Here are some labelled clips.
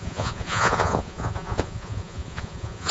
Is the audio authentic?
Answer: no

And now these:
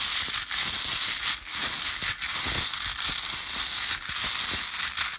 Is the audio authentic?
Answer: yes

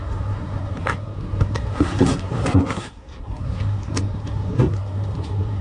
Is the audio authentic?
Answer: no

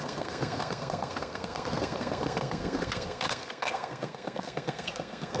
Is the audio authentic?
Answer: no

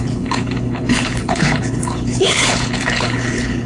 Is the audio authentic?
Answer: no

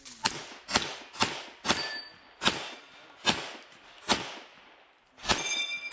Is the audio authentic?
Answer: yes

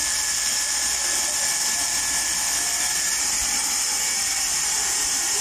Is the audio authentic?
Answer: no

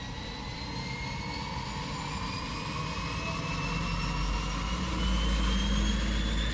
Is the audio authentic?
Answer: yes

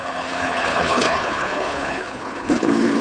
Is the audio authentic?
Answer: no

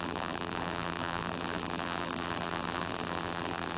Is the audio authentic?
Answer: no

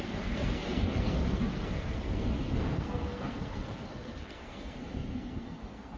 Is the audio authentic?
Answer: no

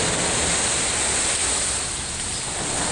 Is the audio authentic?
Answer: yes